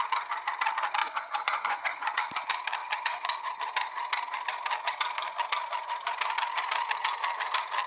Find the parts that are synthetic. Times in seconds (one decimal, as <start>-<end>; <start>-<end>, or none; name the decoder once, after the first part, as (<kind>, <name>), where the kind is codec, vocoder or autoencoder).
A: 1.0-2.2 (vocoder, Vocos); 2.8-3.5